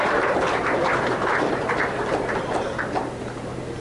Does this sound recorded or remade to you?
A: remade